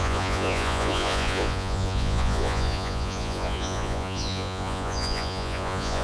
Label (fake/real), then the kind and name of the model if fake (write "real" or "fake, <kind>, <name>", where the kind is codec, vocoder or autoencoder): fake, vocoder, Vocos